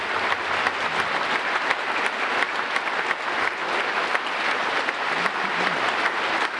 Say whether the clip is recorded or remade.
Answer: recorded